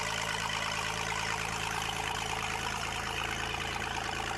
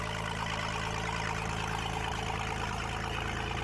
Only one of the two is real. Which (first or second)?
second